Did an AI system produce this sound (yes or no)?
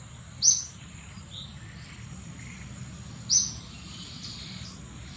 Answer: no